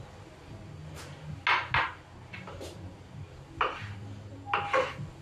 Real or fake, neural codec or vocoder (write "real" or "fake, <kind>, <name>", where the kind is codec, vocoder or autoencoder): real